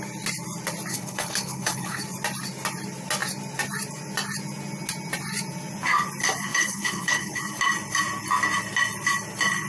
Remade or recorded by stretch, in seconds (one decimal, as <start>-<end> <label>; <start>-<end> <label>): 0.0-0.9 recorded; 0.9-2.0 remade; 2.0-6.5 recorded; 6.5-7.4 remade; 7.4-9.7 recorded